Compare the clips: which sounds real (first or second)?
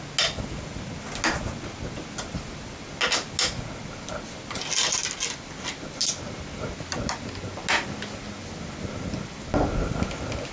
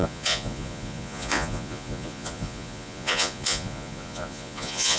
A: first